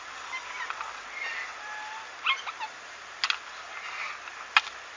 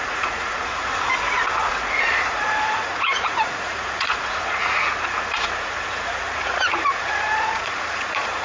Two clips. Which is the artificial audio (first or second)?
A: second